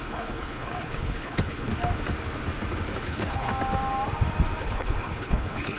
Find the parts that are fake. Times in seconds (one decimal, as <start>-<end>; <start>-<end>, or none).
0.0-1.7; 3.0-3.5; 4.6-5.8